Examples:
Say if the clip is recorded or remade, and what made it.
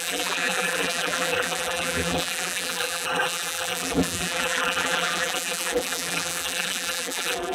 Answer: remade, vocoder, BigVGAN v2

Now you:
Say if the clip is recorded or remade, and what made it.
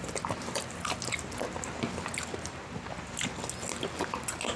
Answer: recorded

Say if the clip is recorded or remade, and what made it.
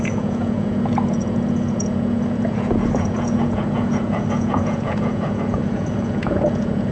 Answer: remade, vocoder, Vocos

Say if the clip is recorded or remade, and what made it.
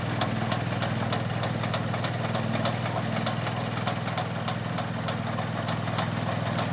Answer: recorded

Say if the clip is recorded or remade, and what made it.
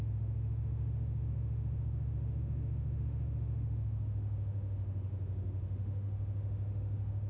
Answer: remade, autoencoder, DAC-VAE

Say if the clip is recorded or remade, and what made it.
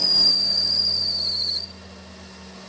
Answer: recorded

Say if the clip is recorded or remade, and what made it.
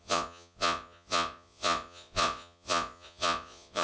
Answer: remade, vocoder, Vocos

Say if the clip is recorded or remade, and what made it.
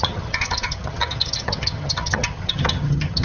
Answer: remade, vocoder, HiFi-GAN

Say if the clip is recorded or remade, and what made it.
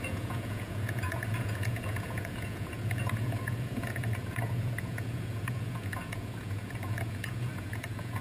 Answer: remade, vocoder, Vocos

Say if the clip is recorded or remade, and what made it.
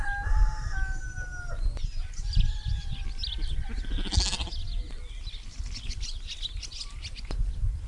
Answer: recorded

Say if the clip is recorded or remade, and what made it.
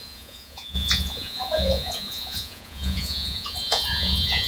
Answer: remade, vocoder, Vocos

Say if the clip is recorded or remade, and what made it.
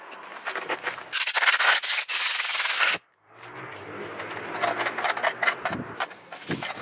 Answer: recorded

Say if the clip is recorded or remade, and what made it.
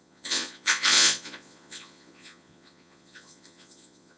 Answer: remade, vocoder, Vocos